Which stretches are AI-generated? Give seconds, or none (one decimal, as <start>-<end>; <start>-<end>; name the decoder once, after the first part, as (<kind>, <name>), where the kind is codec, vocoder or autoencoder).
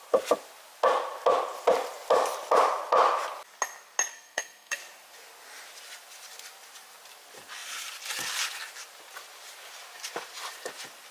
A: 4.1-4.8 (codec, SNAC)